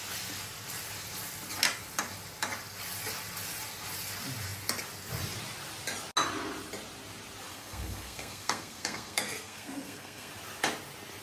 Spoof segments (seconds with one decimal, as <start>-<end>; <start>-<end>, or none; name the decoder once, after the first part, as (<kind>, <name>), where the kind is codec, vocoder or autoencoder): 7.5-10.3 (codec, SNAC)